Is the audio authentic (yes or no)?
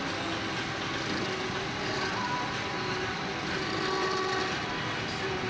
yes